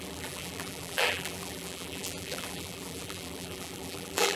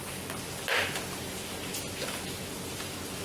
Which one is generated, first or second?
first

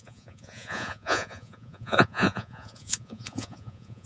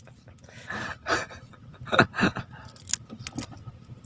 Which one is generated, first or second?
first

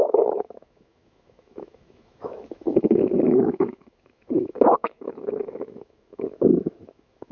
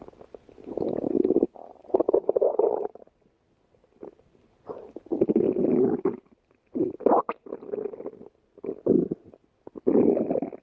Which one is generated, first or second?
first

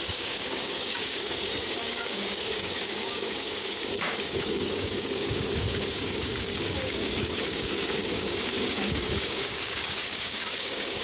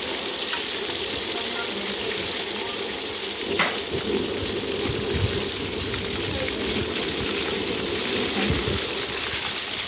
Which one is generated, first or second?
first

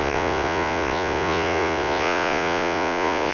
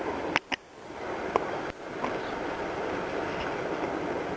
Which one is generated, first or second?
first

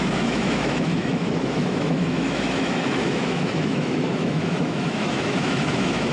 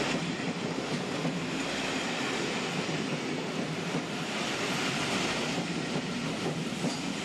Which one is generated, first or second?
first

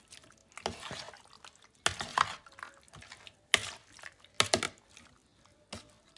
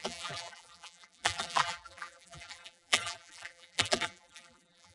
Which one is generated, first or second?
second